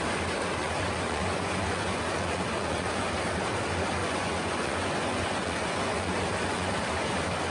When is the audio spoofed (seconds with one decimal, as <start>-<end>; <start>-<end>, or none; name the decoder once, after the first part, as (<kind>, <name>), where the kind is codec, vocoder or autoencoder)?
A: 0.6-3.1 (vocoder, Vocos); 4.0-6.7